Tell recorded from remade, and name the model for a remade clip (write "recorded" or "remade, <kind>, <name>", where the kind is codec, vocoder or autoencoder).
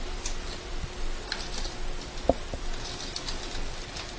recorded